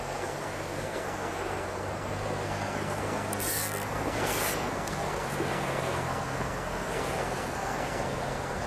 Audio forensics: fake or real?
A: fake